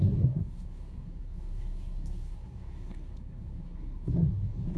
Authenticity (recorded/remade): remade